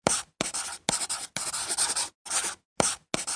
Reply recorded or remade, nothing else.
recorded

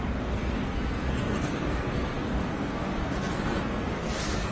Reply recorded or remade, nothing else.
remade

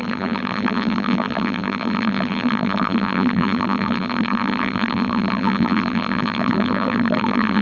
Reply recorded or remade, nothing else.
remade